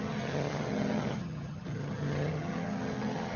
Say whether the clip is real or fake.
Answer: fake